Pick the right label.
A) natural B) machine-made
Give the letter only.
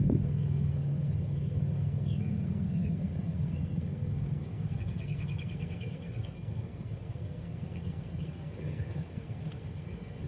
B